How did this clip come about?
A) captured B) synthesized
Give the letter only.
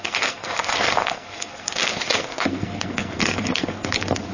B